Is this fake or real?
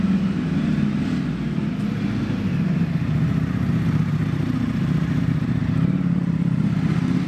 real